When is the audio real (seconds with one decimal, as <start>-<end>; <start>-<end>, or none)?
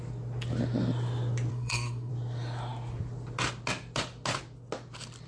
0.0-1.5; 2.1-5.3